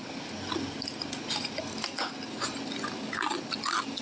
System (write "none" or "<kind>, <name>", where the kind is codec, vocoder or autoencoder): none